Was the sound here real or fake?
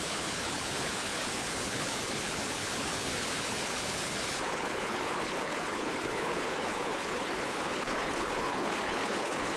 fake